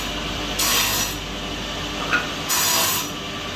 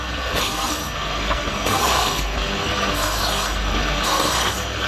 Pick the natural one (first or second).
first